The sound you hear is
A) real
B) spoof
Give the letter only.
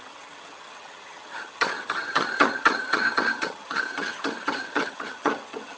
B